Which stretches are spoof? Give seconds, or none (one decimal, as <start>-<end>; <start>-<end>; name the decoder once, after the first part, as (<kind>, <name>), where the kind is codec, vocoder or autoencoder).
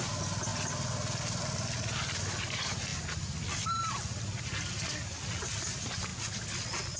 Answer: none